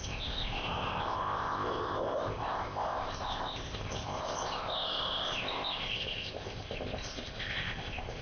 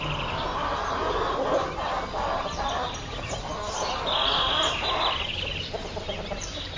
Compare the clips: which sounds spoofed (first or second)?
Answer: first